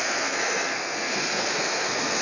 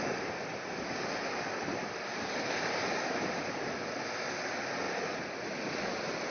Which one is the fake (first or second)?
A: first